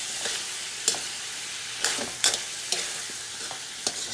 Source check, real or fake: real